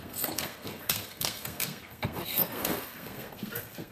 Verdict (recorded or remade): remade